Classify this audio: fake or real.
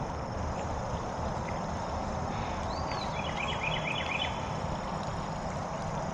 real